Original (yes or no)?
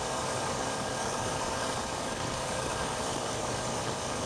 no